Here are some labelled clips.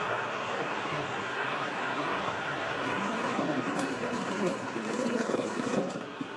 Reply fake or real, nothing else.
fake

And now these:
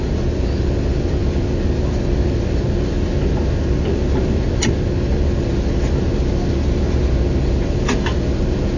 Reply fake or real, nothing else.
real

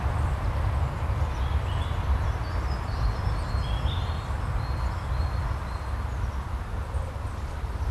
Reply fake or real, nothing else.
real